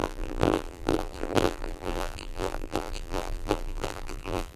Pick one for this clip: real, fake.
fake